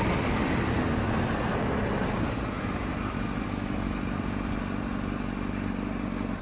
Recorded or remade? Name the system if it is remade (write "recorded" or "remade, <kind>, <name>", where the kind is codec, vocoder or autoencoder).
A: recorded